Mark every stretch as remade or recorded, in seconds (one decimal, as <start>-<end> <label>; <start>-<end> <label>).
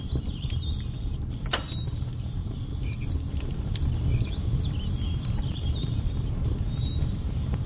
0.0-3.8 remade; 3.8-5.1 recorded; 5.1-7.7 remade